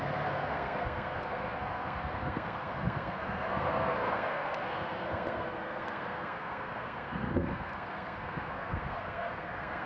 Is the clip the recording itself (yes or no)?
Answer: no